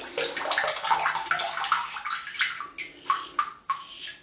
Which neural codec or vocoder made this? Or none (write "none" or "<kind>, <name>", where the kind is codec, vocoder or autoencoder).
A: none